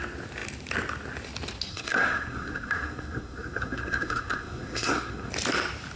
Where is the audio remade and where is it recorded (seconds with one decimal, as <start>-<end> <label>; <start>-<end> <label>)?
0.0-1.7 recorded; 1.7-5.3 remade; 5.3-6.0 recorded